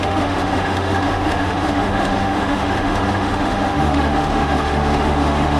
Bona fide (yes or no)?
no